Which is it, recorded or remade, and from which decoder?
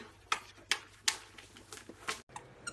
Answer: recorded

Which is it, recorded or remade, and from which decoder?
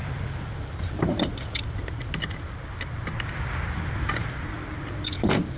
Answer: recorded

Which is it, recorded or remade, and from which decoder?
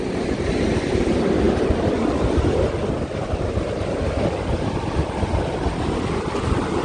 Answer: recorded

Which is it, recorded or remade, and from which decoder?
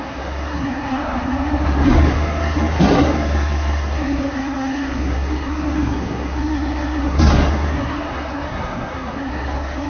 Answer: remade, codec, SNAC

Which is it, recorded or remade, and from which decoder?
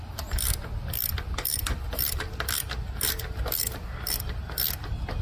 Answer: recorded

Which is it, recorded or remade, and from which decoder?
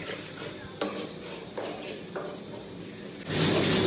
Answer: recorded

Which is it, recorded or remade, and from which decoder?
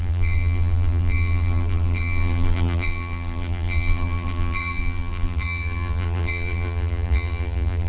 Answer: remade, vocoder, BigVGAN v2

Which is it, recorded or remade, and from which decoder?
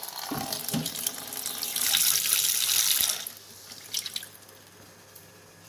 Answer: recorded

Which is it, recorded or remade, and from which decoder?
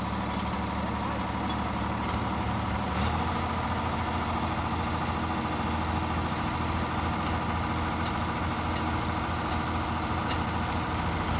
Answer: recorded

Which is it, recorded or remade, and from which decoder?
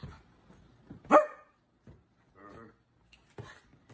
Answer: recorded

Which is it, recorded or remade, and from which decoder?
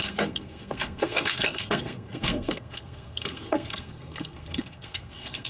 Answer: remade, codec, SNAC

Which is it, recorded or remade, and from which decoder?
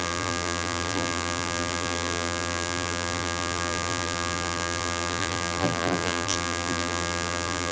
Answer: remade, vocoder, BigVGAN v2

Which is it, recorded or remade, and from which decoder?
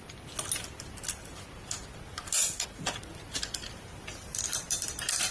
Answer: recorded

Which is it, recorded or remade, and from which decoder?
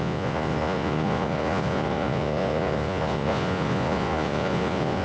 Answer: remade, vocoder, Vocos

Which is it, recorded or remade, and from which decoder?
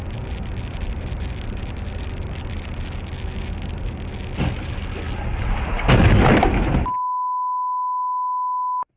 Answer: recorded